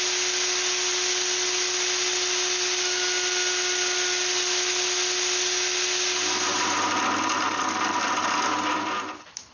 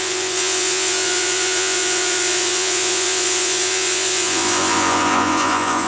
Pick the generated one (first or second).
second